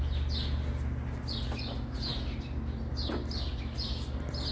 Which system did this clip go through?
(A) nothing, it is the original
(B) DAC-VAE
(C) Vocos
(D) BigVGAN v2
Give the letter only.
A